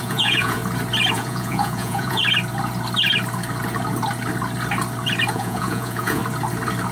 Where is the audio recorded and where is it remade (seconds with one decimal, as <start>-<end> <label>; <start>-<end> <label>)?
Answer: 0.0-0.6 remade; 0.6-1.1 recorded; 1.1-2.2 remade; 2.2-5.3 recorded; 5.3-6.2 remade; 6.2-6.9 recorded